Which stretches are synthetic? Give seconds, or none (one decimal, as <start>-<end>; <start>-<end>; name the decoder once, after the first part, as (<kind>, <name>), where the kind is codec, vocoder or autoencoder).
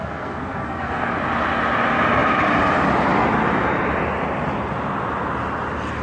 0.0-1.1 (codec, SNAC)